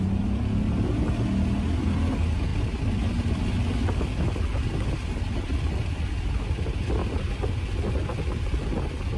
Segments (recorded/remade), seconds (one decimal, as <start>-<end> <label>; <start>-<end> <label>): 0.0-9.2 recorded